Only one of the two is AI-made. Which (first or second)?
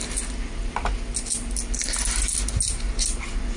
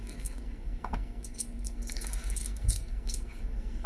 second